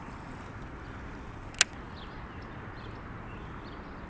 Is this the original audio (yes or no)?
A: yes